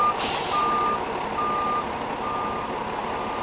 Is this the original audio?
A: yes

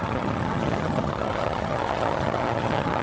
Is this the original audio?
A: no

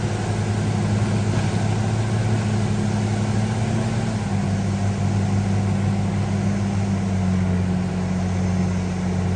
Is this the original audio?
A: yes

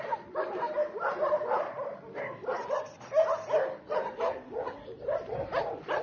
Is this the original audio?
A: yes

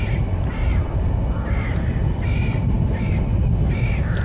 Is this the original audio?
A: yes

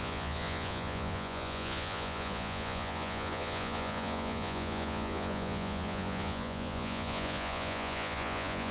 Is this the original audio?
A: no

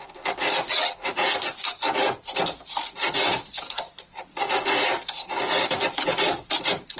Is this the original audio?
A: yes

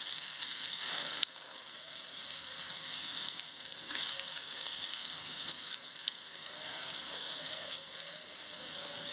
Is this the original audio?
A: no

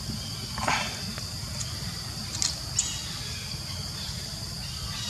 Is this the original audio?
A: yes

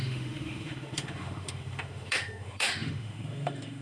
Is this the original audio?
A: no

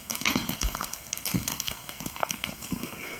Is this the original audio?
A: no